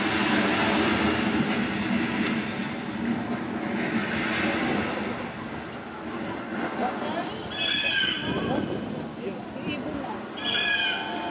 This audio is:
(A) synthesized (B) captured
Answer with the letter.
B